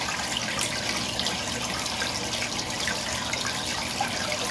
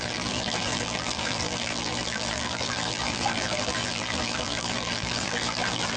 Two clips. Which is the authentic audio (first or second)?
first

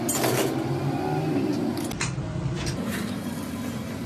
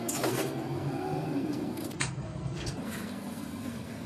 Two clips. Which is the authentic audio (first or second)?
first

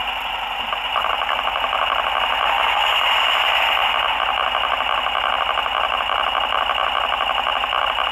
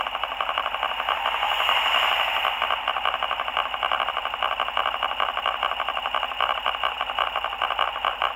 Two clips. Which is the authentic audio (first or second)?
first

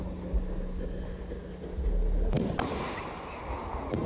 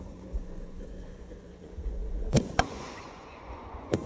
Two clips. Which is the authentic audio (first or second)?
first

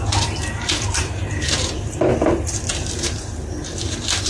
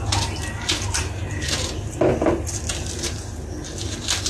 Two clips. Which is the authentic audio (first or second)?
second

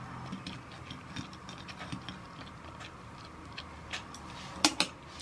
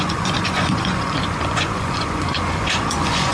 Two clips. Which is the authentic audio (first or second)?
first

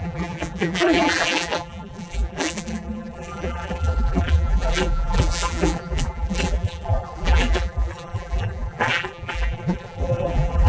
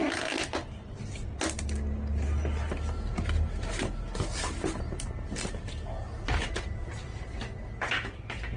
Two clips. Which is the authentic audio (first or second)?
second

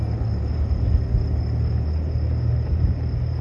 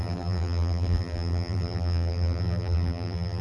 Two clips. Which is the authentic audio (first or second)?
first